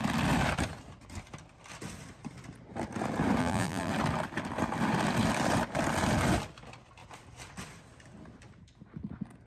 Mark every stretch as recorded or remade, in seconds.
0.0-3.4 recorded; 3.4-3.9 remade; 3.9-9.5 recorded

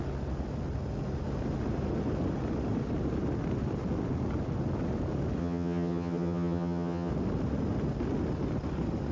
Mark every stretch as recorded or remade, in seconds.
0.0-5.4 recorded; 5.4-7.1 remade; 7.1-9.1 recorded

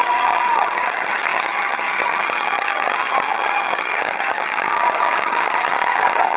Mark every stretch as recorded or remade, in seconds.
0.0-6.4 remade

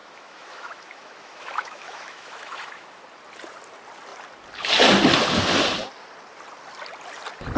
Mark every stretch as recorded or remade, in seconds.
0.0-3.0 remade; 3.0-7.6 recorded

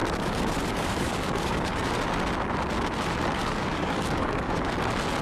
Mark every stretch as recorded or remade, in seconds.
0.0-1.8 remade; 1.8-3.4 recorded; 3.4-4.7 remade; 4.7-5.2 recorded

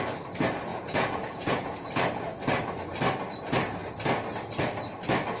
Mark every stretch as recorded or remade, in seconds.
0.0-0.7 recorded; 0.7-1.9 remade; 1.9-5.4 recorded